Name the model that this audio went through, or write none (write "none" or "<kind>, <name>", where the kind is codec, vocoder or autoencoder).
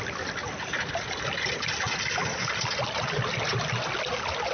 none